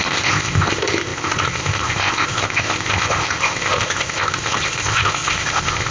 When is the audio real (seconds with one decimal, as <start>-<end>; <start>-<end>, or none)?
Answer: none